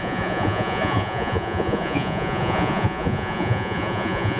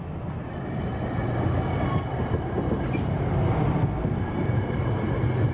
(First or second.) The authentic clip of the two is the second